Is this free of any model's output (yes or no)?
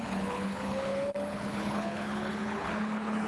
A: no